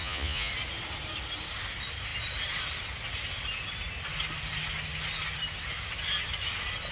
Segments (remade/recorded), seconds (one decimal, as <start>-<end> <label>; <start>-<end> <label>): 0.0-0.5 remade; 0.5-6.9 recorded